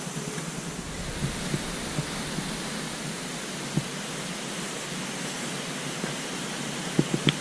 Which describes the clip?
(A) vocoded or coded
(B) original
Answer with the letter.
B